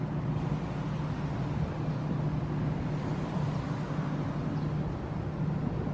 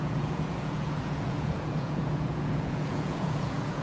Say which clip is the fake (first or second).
second